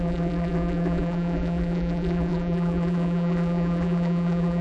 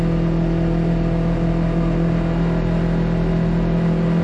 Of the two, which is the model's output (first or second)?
first